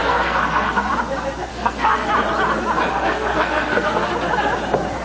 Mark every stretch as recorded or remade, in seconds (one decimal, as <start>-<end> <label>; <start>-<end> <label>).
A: 0.0-0.9 remade; 0.9-1.5 recorded; 1.5-2.1 remade; 2.1-2.9 recorded; 2.9-4.1 remade; 4.1-5.0 recorded

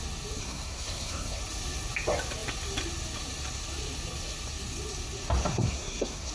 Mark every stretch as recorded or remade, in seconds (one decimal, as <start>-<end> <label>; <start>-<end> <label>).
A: 0.0-0.4 recorded; 0.4-1.4 remade; 1.4-5.5 recorded; 5.5-6.3 remade